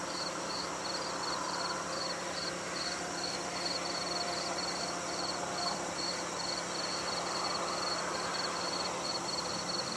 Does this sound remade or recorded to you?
recorded